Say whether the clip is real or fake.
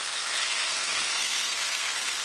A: fake